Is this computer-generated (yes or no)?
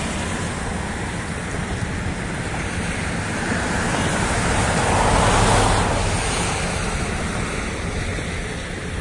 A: no